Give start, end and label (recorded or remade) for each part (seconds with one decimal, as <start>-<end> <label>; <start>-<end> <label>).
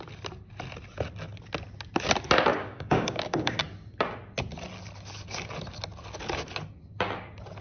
0.0-2.5 recorded; 2.5-3.6 remade; 3.6-7.6 recorded